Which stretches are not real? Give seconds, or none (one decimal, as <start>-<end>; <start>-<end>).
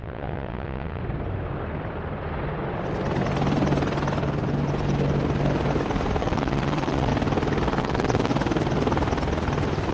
0.0-1.0; 6.2-7.1; 7.8-8.3